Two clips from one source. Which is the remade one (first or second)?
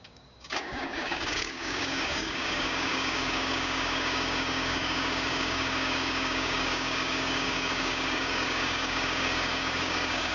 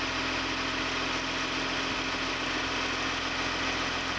first